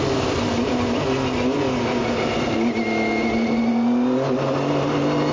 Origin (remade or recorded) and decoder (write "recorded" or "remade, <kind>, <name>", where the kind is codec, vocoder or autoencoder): recorded